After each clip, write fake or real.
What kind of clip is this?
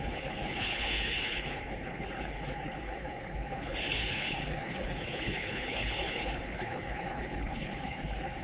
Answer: fake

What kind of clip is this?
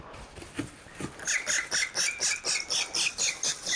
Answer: real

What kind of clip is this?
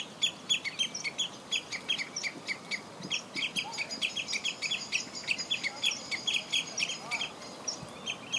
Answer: real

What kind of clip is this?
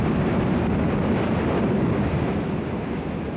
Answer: real